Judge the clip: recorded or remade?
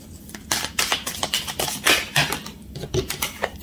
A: remade